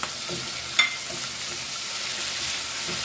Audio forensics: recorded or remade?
recorded